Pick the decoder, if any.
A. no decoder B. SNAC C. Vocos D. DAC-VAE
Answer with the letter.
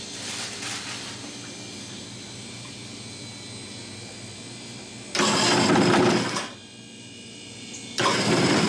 A